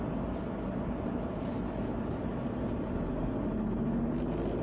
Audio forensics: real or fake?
real